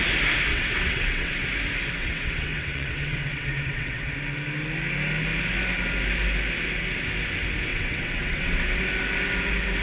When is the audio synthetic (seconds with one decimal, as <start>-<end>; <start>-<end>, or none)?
0.5-1.3; 2.0-4.1; 7.7-8.8